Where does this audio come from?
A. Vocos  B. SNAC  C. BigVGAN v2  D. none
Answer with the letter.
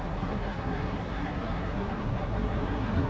B